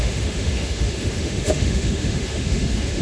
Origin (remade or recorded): remade